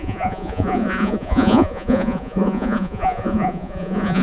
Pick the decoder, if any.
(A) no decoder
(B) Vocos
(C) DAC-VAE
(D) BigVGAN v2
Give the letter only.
B